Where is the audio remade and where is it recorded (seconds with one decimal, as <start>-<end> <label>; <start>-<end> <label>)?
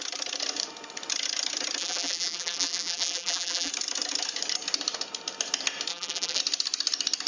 0.0-1.8 recorded; 1.8-3.7 remade; 3.7-5.9 recorded; 5.9-6.4 remade; 6.4-7.3 recorded